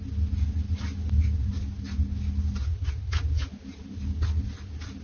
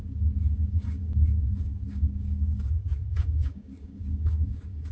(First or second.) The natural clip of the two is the first